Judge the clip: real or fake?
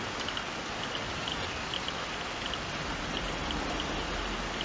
real